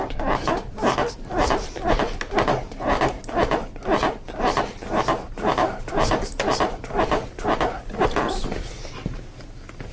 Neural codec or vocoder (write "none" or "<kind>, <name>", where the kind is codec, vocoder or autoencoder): none